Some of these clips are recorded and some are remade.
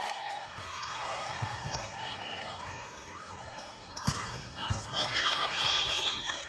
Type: remade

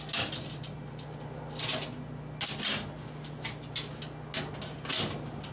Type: recorded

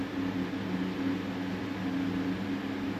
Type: recorded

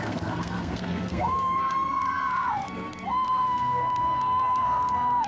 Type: remade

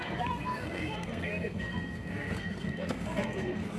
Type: remade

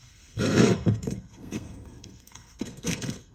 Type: remade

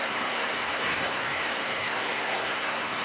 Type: remade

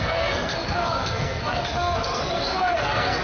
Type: remade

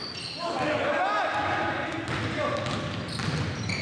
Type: recorded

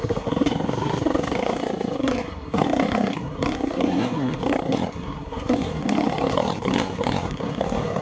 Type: remade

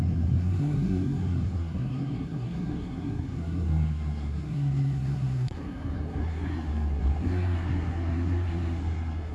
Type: remade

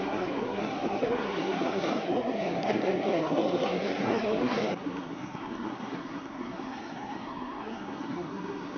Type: remade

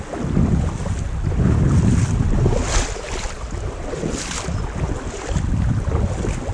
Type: recorded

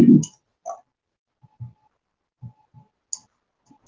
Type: recorded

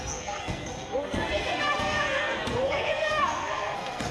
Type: remade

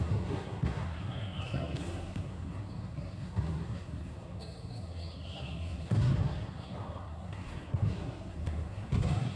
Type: remade